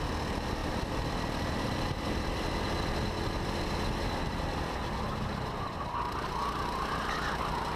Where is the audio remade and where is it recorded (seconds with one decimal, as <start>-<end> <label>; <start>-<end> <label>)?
0.0-0.6 recorded; 0.6-3.1 remade; 3.1-7.8 recorded